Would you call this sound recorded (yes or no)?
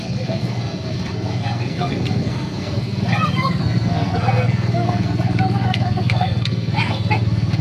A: no